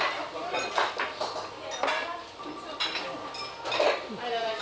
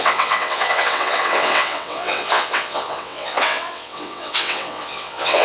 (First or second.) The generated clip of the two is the second